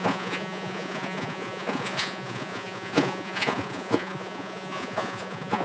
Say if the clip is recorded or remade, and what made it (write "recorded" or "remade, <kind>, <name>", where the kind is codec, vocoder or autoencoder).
remade, vocoder, Vocos